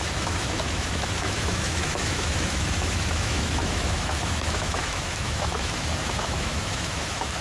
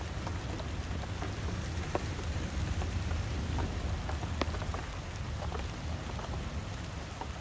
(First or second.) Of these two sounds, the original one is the second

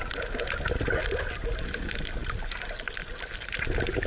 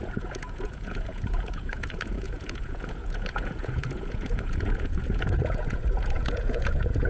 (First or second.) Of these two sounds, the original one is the first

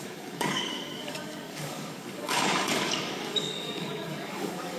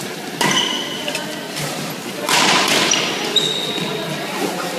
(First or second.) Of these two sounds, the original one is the second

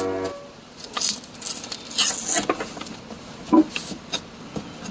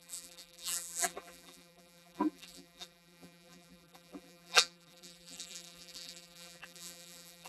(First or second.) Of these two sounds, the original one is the first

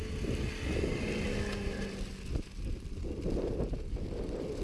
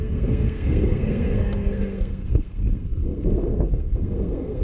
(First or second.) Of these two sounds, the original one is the first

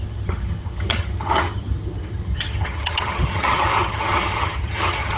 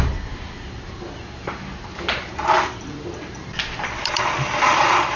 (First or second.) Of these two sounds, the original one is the second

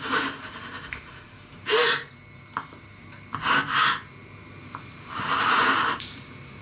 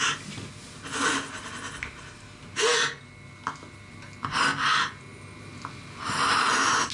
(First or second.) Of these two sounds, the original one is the second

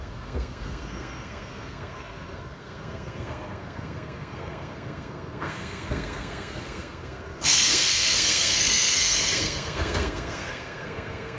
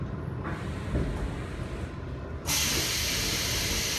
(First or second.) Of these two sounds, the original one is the second